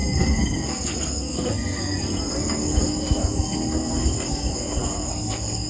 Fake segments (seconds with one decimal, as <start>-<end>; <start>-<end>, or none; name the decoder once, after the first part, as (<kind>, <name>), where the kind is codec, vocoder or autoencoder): 0.0-5.7 (codec, SNAC)